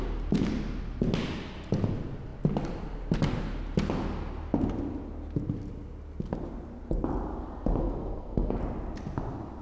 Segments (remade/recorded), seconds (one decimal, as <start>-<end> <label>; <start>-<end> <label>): 0.0-7.8 recorded; 7.8-8.6 remade; 8.6-9.6 recorded